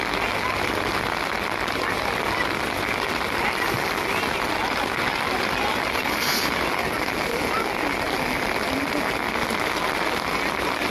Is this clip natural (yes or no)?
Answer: yes